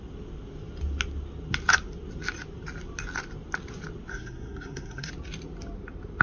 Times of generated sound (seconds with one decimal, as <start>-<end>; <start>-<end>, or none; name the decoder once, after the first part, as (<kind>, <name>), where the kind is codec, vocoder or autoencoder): 4.1-5.1 (codec, SNAC)

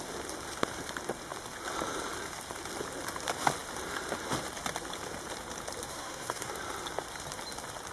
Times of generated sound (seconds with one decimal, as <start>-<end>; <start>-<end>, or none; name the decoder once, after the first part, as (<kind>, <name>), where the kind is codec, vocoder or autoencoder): 5.9-6.5 (codec, SNAC)

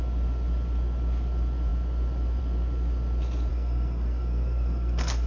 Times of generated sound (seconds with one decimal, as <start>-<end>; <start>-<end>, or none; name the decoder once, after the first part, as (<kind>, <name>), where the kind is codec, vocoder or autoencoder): 3.5-5.3 (codec, SNAC)

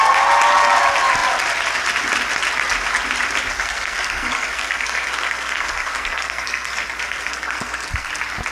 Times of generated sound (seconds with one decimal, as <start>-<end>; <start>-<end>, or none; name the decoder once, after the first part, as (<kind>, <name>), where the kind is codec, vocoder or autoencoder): 3.5-8.1 (codec, SNAC)

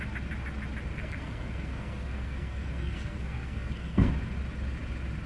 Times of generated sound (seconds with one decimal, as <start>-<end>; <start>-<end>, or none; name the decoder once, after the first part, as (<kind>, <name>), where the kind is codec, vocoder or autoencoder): 0.9-4.1 (codec, SNAC)

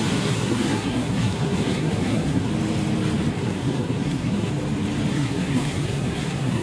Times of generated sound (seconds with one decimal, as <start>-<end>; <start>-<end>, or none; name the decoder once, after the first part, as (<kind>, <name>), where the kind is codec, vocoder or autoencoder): 0.0-2.5 (codec, SNAC); 3.3-4.5; 5.1-6.6